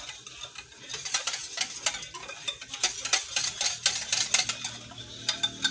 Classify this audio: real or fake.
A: real